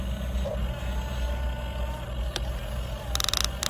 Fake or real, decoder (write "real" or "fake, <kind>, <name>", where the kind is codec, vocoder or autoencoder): real